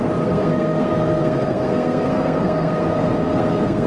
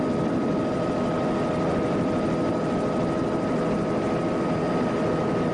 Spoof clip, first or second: first